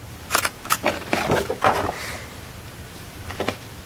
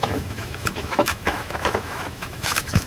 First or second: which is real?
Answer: first